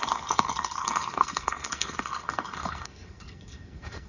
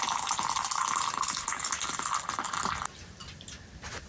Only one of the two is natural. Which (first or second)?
second